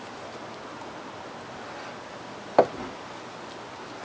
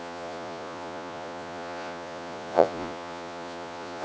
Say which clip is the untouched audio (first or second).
first